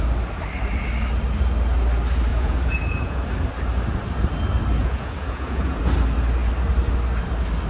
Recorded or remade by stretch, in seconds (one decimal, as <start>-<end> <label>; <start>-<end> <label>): 0.0-2.3 recorded; 2.3-3.2 remade; 3.2-4.8 recorded; 4.8-5.8 remade; 5.8-7.7 recorded